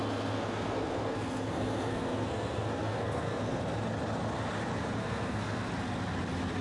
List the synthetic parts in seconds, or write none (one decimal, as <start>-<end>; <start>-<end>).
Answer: 0.0-3.6; 5.0-5.7

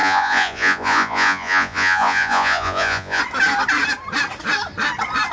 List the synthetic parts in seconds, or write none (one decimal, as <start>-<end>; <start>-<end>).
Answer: 0.0-3.2

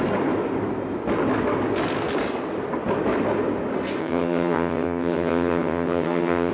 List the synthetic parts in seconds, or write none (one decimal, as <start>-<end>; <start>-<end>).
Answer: 4.0-6.5

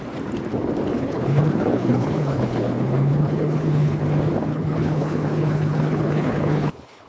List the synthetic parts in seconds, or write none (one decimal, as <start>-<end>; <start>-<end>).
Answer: 0.9-4.0; 4.5-7.1

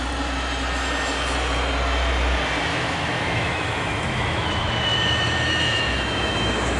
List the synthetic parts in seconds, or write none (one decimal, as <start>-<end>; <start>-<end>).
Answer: 2.7-6.8

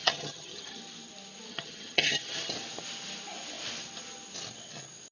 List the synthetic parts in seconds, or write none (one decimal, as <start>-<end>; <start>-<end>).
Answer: 0.0-0.8; 1.5-2.5

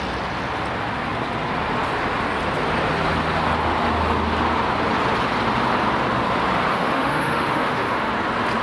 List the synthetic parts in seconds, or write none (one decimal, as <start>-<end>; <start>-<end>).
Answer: 6.7-8.1